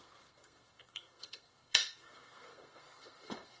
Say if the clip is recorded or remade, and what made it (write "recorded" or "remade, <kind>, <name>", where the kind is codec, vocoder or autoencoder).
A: remade, codec, SNAC